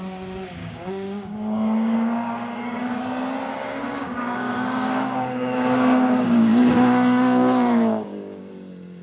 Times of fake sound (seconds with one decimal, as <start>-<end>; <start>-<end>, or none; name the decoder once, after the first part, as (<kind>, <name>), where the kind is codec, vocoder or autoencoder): 0.6-2.9 (codec, DAC); 3.5-8.5